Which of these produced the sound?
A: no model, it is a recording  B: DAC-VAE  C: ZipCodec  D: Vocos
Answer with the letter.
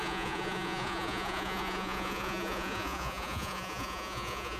D